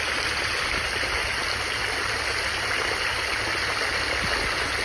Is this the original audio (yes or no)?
yes